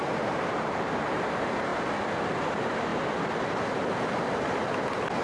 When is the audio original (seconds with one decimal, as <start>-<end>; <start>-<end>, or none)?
1.7-2.2; 2.9-5.2